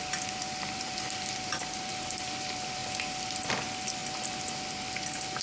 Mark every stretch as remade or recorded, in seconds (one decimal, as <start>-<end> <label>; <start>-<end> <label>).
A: 0.0-2.8 remade; 2.8-3.5 recorded; 3.5-5.4 remade